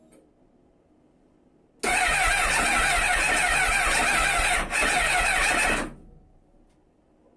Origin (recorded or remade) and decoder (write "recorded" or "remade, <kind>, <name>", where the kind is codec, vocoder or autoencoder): recorded